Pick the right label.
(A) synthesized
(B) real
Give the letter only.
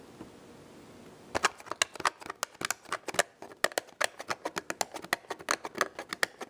B